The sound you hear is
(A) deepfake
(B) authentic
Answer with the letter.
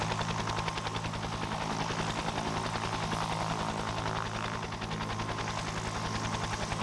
B